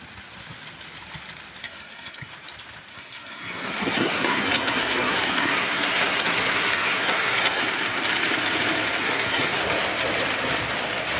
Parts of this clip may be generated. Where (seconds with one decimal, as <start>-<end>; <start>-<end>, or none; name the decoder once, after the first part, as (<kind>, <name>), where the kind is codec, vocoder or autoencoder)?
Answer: 1.6-2.3 (codec, SNAC); 2.9-7.6; 9.0-9.6